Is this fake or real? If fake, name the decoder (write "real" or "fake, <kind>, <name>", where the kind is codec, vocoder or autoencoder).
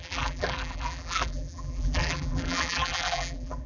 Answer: fake, vocoder, BigVGAN v2